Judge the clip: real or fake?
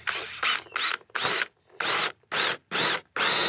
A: real